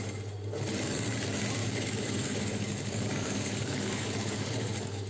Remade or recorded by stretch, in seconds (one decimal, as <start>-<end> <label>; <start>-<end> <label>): 0.0-1.6 recorded; 1.6-5.1 remade